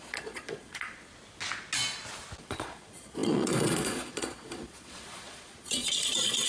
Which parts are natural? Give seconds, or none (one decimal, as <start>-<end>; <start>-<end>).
1.1-2.4

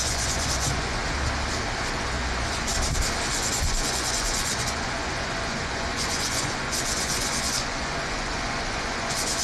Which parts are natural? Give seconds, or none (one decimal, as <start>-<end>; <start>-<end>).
1.0-1.8; 2.7-3.3